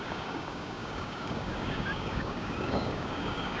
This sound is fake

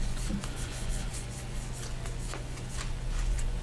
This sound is fake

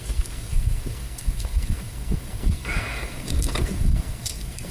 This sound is fake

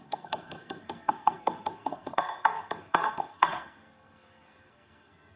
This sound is fake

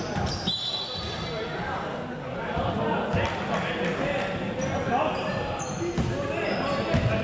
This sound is real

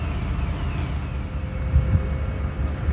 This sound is real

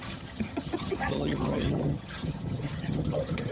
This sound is fake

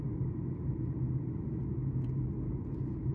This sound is real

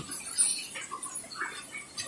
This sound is real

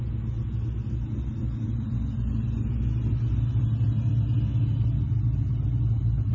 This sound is real